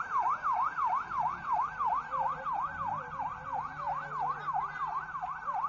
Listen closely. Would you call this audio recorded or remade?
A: recorded